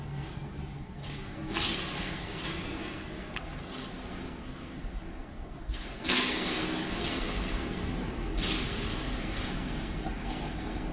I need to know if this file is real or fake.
fake